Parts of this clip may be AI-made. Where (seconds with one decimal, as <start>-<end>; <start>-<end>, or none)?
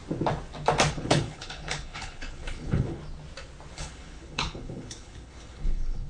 0.9-3.0; 3.7-6.1